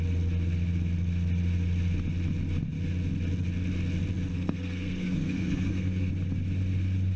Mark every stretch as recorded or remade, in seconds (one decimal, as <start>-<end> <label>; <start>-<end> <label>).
0.0-4.3 recorded; 4.3-6.1 remade; 6.1-7.2 recorded